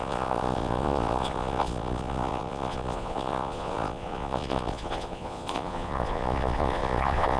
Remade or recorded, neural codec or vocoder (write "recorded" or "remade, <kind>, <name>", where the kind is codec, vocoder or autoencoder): remade, vocoder, Vocos